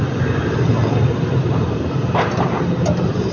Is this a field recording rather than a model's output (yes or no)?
yes